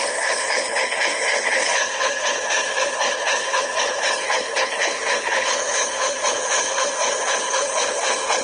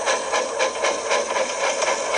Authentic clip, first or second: second